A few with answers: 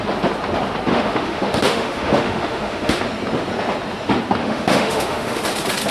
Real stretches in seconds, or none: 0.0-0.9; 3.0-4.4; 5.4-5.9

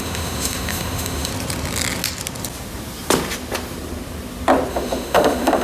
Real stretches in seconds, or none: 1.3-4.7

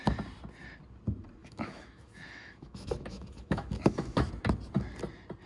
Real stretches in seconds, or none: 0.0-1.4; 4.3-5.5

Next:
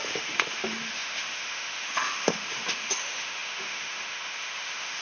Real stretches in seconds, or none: none

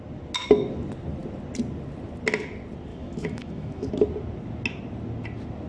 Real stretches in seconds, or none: 0.0-2.9; 3.9-5.7

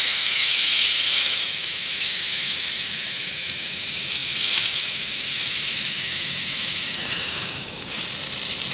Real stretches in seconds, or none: 8.0-8.7